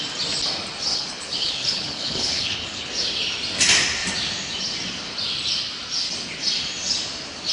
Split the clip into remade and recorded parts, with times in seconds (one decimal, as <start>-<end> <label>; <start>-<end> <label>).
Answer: 0.0-0.9 recorded; 0.9-2.9 remade; 2.9-7.5 recorded